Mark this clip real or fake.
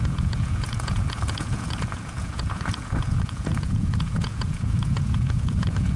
fake